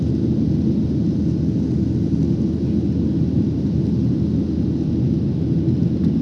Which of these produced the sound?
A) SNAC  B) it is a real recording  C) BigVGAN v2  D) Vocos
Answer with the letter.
B